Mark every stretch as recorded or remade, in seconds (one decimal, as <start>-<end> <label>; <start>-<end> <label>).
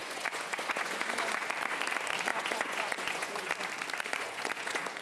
0.0-1.4 remade; 1.4-2.3 recorded; 2.3-3.5 remade; 3.5-4.1 recorded; 4.1-5.0 remade